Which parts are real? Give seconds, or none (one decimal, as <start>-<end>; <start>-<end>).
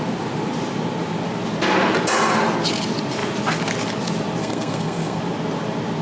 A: 0.0-4.4; 5.2-6.0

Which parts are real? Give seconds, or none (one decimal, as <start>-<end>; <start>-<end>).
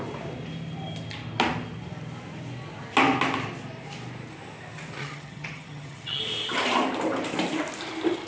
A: 0.0-5.0; 6.2-8.3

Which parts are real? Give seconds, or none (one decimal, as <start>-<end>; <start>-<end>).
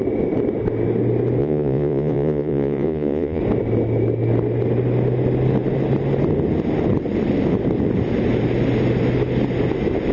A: 0.0-1.4; 3.4-10.1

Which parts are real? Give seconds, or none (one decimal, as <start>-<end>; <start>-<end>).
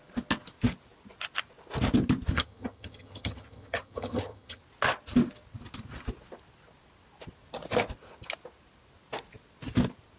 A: 0.0-2.3; 4.6-10.2